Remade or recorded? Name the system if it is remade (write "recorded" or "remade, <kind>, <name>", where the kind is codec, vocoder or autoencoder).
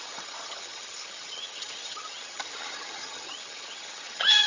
remade, vocoder, HiFi-GAN